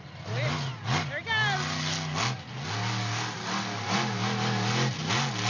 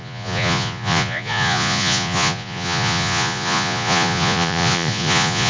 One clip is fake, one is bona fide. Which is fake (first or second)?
second